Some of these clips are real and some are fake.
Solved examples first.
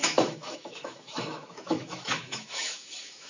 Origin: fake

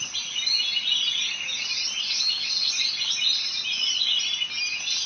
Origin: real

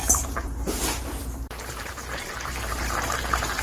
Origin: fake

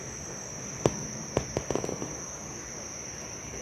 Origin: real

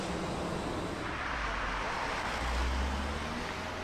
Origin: real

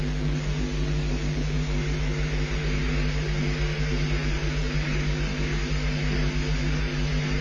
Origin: real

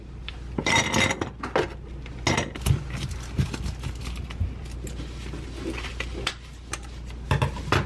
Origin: real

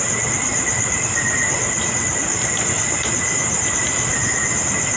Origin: real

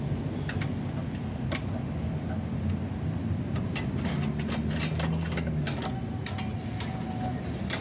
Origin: real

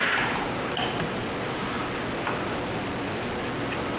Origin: real